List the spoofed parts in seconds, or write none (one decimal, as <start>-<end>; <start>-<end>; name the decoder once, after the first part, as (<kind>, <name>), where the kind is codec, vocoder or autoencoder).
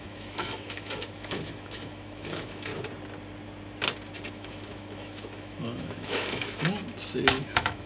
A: 0.0-2.7 (autoencoder, DAC-VAE); 4.3-6.8; 7.3-7.9